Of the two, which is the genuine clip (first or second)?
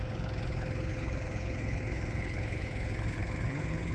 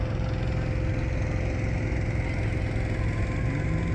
second